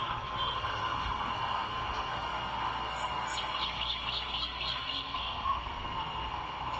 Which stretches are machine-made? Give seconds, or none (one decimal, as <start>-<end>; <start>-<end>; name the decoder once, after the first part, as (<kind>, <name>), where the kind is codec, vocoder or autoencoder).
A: 0.0-6.8 (codec, SNAC)